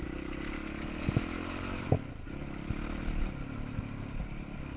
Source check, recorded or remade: recorded